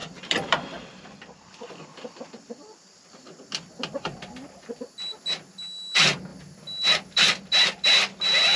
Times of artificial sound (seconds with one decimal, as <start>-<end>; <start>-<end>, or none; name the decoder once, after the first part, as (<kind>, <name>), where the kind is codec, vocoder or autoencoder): 0.0-3.1 (vocoder, BigVGAN v2)